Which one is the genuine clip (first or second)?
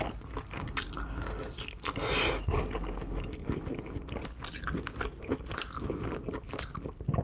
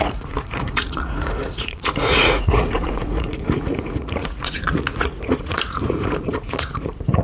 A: first